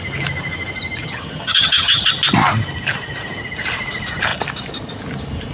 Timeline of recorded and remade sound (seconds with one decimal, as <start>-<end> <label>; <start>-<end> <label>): 0.0-1.0 recorded; 1.0-2.1 remade; 2.1-5.5 recorded